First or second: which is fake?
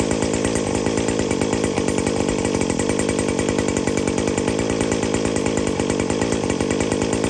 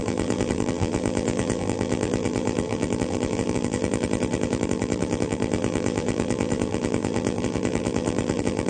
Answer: second